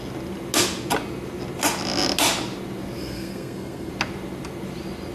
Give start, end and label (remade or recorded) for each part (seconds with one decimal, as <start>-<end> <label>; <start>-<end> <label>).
0.0-3.0 recorded; 3.0-3.9 remade; 3.9-5.1 recorded